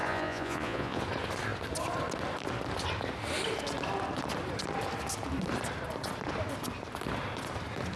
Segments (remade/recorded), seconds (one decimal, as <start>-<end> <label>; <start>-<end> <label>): 0.0-1.0 remade; 1.0-8.0 recorded